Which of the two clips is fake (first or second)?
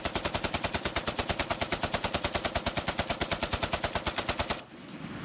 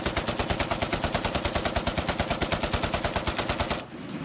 first